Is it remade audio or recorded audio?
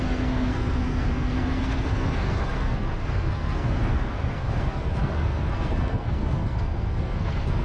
remade